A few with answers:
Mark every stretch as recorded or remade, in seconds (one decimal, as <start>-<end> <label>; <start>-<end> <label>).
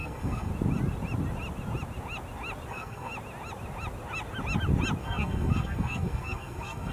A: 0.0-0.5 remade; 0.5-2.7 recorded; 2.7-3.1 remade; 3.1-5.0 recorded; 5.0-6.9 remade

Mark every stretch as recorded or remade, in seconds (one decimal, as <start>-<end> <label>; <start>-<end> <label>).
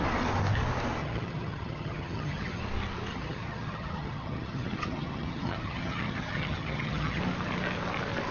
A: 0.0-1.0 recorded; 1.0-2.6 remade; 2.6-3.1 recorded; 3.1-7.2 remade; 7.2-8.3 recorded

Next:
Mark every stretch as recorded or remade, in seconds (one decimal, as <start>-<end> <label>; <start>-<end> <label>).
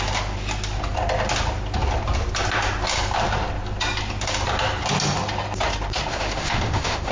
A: 0.0-6.1 recorded; 6.1-7.1 remade